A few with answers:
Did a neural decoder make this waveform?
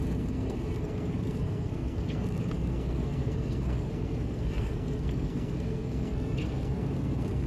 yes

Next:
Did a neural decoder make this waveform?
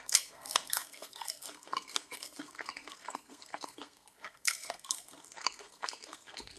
yes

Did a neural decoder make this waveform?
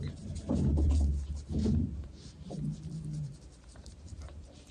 yes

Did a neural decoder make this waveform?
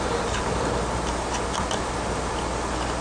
no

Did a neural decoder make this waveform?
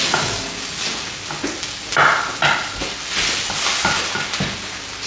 no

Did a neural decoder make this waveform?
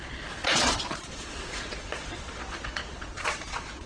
yes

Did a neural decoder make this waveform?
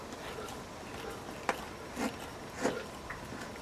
no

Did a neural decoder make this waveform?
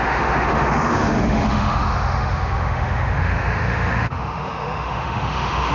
yes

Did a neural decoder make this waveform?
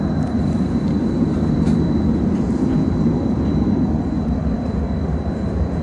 yes